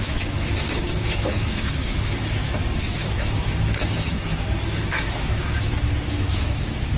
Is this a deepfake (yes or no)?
yes